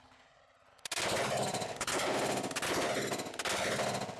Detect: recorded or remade recorded